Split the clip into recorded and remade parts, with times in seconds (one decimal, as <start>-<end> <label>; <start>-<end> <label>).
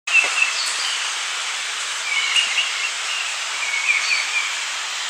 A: 0.0-5.1 recorded